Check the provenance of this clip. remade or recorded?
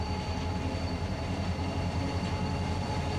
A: remade